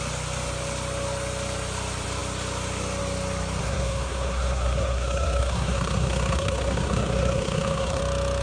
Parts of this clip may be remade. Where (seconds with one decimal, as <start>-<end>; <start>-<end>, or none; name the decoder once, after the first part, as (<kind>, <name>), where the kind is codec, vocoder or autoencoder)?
3.6-8.0 (codec, SNAC)